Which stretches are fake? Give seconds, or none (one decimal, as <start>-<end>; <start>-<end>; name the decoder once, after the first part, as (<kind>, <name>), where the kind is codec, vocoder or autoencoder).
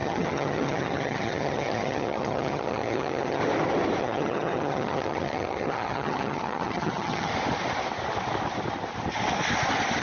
0.0-3.4 (vocoder, HiFi-GAN); 4.0-7.3